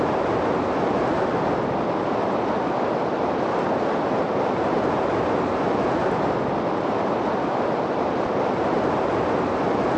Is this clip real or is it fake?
real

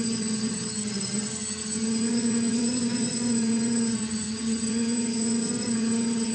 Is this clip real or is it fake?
fake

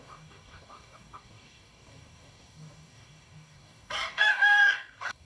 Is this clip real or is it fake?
fake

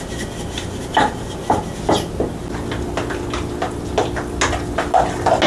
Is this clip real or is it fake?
real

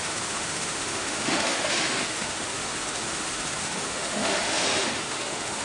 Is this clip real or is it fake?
fake